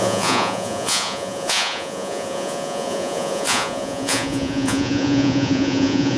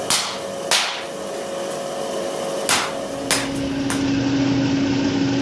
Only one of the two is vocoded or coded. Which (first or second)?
first